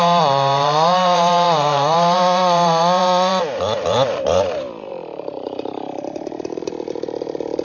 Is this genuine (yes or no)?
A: no